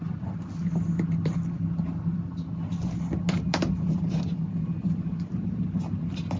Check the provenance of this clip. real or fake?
real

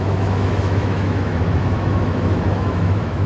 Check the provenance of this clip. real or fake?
fake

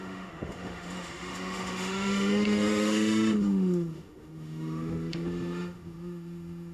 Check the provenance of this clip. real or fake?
fake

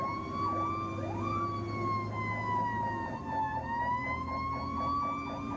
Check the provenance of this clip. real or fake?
real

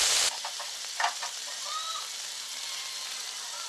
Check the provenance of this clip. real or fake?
real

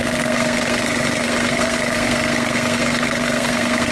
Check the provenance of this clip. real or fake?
fake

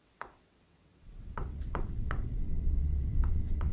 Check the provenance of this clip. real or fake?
fake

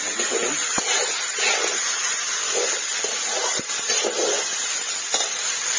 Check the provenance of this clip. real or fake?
real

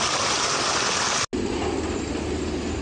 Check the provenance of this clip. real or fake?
real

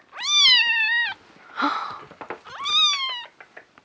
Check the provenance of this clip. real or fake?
real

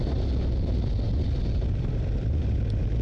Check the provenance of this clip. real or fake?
real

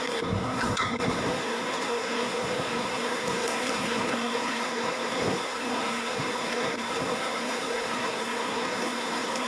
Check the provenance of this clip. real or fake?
fake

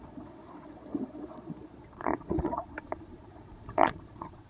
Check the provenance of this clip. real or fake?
fake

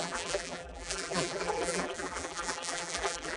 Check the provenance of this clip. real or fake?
fake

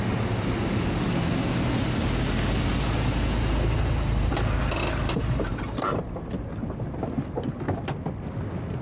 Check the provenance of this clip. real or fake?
real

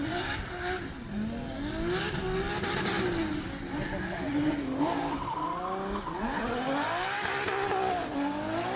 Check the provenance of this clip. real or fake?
real